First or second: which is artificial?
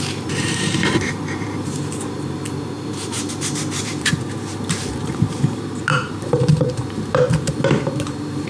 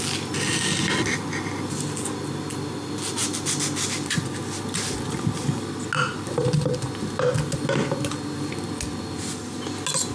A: first